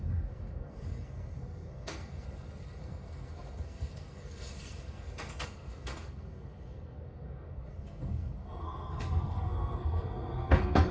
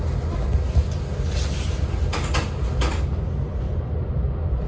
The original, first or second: second